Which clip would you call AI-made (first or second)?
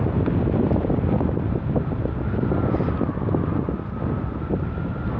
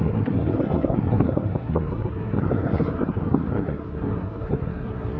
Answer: second